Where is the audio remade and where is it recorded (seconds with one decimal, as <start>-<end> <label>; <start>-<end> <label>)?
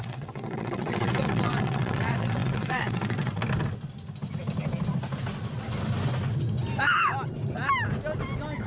0.0-3.4 remade; 3.4-8.7 recorded